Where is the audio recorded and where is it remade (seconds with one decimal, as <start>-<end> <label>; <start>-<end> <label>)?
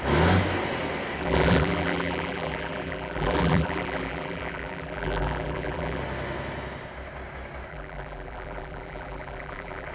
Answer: 0.0-1.2 recorded; 1.2-6.0 remade; 6.0-7.7 recorded; 7.7-9.9 remade